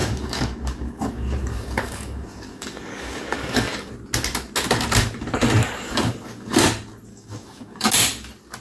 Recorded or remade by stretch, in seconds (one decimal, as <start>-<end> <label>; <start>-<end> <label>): 0.0-3.9 remade; 3.9-5.6 recorded; 5.6-6.6 remade; 6.6-7.1 recorded; 7.1-7.9 remade; 7.9-8.6 recorded